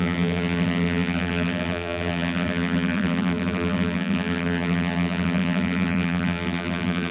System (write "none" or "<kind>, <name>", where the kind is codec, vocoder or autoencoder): vocoder, BigVGAN v2